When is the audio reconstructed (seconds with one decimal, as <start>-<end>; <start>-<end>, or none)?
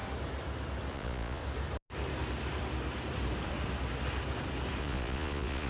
0.9-1.4; 4.8-5.7